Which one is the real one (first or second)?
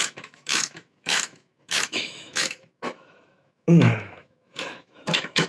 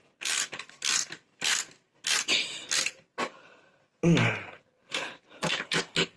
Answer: second